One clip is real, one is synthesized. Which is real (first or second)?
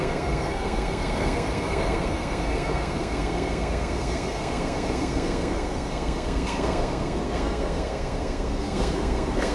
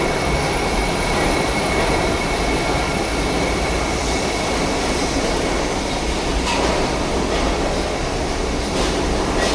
second